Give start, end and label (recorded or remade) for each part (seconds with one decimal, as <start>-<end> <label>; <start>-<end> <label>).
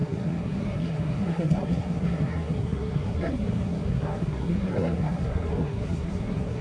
0.0-6.6 remade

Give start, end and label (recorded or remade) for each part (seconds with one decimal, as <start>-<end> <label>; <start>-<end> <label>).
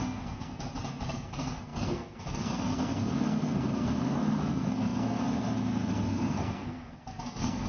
0.0-7.7 remade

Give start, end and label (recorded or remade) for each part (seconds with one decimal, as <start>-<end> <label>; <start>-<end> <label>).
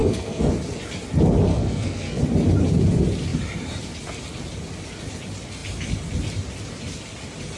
0.0-0.5 remade; 0.5-1.5 recorded; 1.5-2.2 remade; 2.2-7.6 recorded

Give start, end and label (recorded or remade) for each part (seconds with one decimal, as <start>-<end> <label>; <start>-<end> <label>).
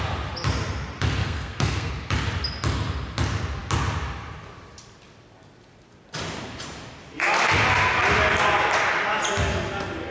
0.0-1.2 recorded; 1.2-1.9 remade; 1.9-10.1 recorded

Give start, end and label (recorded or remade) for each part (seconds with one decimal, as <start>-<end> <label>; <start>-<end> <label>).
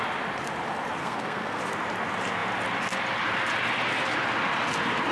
0.0-1.0 recorded; 1.0-1.6 remade; 1.6-5.1 recorded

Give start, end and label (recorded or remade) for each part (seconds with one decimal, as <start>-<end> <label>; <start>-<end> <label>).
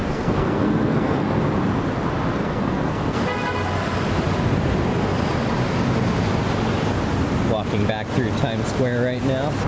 0.0-1.4 remade; 1.4-2.4 recorded; 2.4-3.2 remade; 3.2-9.7 recorded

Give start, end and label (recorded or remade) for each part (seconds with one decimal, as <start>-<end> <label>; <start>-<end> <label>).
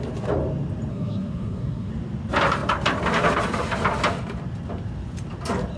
0.0-0.9 recorded; 0.9-1.9 remade; 1.9-5.8 recorded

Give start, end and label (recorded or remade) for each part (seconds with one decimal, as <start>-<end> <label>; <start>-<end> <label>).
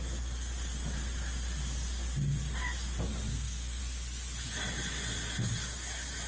0.0-3.3 recorded; 3.3-3.8 remade; 3.8-6.3 recorded